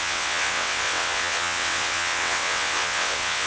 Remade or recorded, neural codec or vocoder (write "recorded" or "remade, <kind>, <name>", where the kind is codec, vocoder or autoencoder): remade, vocoder, WaveNeXt